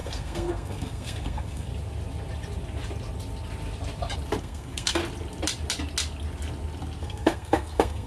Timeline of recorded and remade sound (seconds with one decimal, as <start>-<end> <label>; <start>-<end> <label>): 0.0-1.7 remade; 1.7-4.4 recorded; 4.4-5.0 remade; 5.0-7.0 recorded; 7.0-8.1 remade

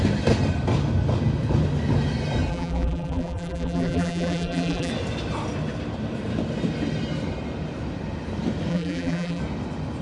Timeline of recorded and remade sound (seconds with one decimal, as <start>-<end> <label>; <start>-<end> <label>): 0.0-2.5 recorded; 2.5-4.9 remade; 4.9-8.7 recorded; 8.7-9.4 remade; 9.4-10.0 recorded

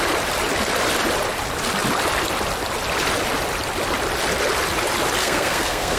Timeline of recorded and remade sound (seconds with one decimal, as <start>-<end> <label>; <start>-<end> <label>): 0.0-5.2 recorded; 5.2-6.0 remade

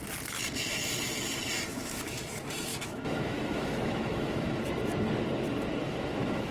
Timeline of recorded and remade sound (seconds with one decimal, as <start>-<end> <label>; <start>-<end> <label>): 0.0-1.7 recorded; 1.7-2.2 remade; 2.2-2.7 recorded; 2.7-4.6 remade; 4.6-5.8 recorded; 5.8-6.5 remade

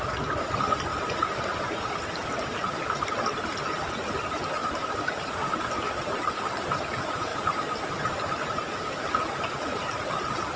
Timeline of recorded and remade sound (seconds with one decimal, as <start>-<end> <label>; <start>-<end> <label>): 0.0-10.6 recorded

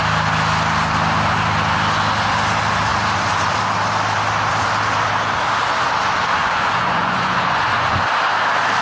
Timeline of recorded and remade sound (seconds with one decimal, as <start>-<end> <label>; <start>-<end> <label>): 0.0-6.4 recorded; 6.4-8.0 remade; 8.0-8.8 recorded

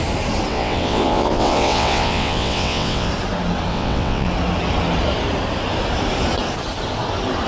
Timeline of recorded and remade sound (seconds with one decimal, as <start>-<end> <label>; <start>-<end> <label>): 0.0-0.5 recorded; 0.5-3.1 remade; 3.1-3.7 recorded; 3.7-4.3 remade; 4.3-7.5 recorded